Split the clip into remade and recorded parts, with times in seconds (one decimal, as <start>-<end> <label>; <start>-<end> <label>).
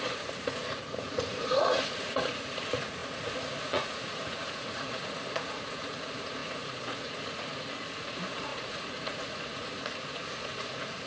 0.0-11.1 remade